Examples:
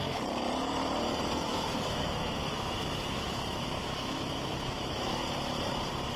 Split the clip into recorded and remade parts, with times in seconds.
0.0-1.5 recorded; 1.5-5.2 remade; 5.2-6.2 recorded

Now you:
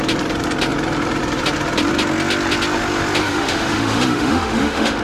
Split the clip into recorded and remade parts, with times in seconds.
0.0-3.2 recorded; 3.2-5.0 remade

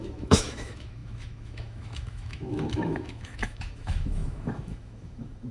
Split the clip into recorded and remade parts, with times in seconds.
0.0-5.5 remade

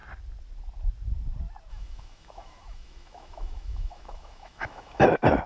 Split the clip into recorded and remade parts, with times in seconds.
0.0-1.7 recorded; 1.7-5.0 remade; 5.0-5.5 recorded

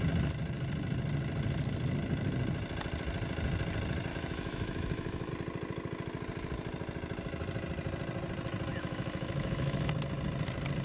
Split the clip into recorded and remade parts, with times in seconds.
0.0-4.1 recorded; 4.1-5.3 remade; 5.3-8.7 recorded; 8.7-9.9 remade; 9.9-10.8 recorded